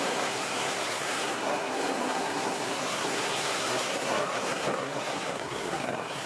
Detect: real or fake fake